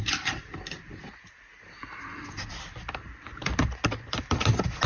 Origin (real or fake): fake